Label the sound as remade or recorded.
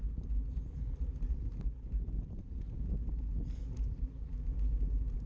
recorded